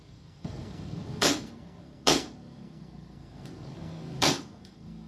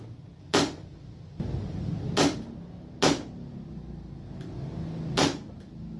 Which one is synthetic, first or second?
first